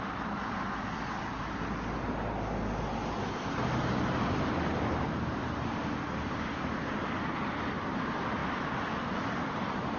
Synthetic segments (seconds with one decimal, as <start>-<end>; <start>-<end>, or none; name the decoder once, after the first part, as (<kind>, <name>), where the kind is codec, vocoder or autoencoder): none